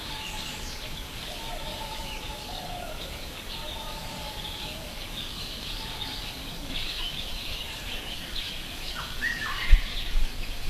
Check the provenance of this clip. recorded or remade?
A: remade